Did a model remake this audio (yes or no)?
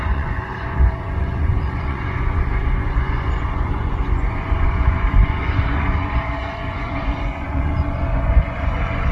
yes